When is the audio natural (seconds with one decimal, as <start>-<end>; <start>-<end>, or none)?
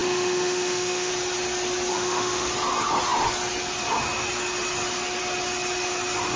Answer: 1.1-1.9; 2.5-6.4